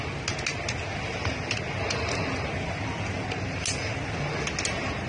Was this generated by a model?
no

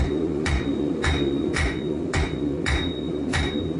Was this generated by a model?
yes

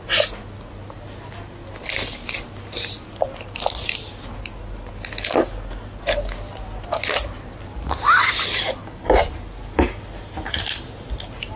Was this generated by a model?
no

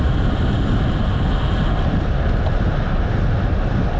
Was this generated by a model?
no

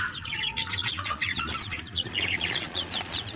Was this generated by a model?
yes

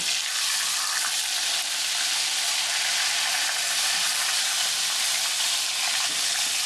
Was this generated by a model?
no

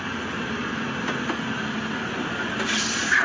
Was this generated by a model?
no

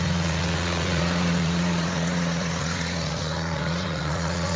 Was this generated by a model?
yes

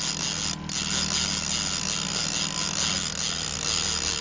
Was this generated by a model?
no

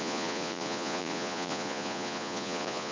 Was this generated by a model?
yes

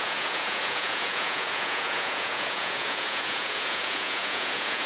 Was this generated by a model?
yes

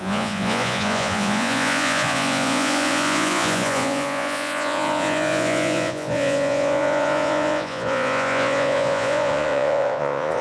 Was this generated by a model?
yes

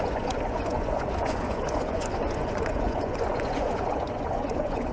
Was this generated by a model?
yes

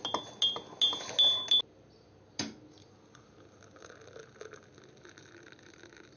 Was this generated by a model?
no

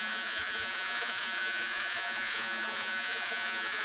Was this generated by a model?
yes